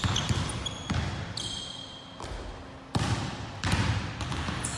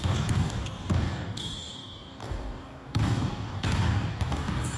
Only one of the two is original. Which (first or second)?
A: first